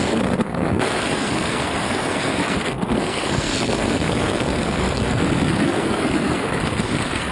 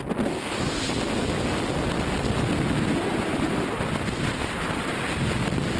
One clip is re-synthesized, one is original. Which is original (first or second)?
second